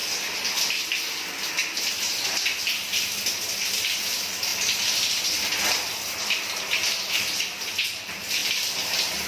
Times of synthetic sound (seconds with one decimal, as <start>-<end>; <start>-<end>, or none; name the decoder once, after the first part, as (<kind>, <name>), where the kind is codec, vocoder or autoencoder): none